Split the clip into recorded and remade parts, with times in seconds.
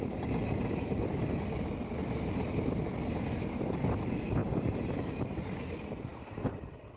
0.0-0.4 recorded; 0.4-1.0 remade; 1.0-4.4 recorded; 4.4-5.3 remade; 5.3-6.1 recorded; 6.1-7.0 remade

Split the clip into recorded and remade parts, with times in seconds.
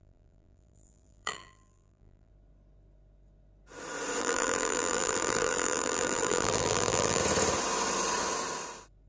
0.0-2.3 remade; 2.3-4.2 recorded; 4.2-7.2 remade; 7.2-9.1 recorded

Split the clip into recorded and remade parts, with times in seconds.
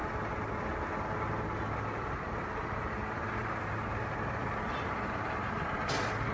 0.0-3.4 recorded; 3.4-4.0 remade; 4.0-4.4 recorded; 4.4-6.3 remade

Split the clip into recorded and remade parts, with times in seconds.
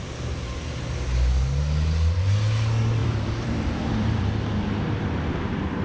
0.0-3.0 recorded; 3.0-4.3 remade; 4.3-5.8 recorded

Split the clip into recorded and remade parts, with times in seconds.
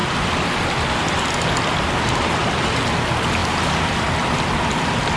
0.0-5.2 recorded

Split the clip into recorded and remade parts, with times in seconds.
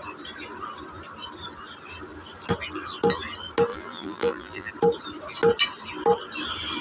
0.0-3.7 recorded; 3.7-4.7 remade; 4.7-6.8 recorded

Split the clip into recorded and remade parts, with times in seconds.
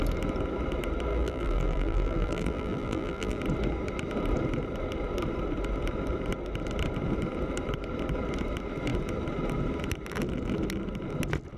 0.0-1.1 recorded; 1.1-3.4 remade; 3.4-11.6 recorded